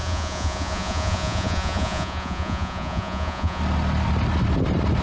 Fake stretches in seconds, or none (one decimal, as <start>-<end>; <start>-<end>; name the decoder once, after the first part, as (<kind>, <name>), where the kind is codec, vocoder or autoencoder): 0.0-3.6 (vocoder, Vocos)